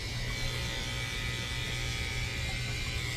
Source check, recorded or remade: recorded